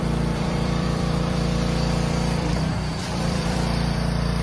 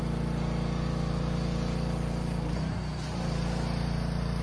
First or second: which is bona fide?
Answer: second